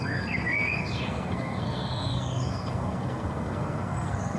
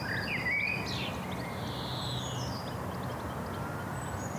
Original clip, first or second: second